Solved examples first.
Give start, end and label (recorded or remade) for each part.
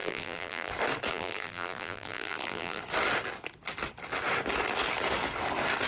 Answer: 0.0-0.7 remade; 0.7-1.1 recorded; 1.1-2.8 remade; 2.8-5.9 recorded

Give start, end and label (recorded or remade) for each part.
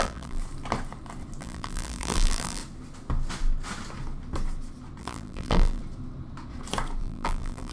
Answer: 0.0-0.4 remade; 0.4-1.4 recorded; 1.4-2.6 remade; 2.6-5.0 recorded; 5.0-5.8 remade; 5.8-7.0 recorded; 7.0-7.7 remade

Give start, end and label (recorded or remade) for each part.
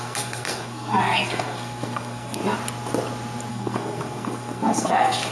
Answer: 0.0-2.4 remade; 2.4-3.5 recorded; 3.5-5.3 remade